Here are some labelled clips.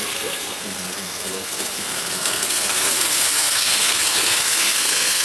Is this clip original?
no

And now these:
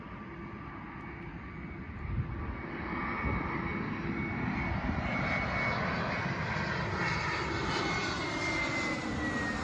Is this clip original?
yes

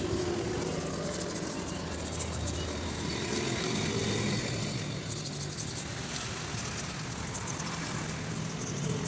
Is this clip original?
yes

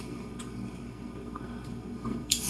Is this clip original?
no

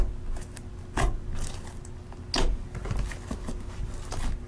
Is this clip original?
yes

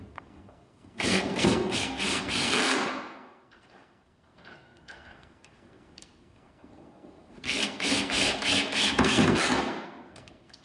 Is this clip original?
no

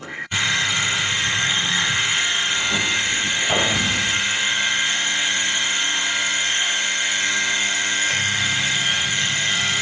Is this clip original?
no